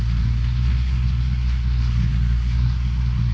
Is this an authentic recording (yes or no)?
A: no